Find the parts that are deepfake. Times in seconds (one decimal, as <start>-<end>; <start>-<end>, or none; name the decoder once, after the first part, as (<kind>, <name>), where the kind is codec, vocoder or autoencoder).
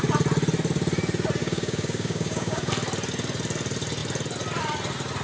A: 1.4-2.7 (codec, DAC)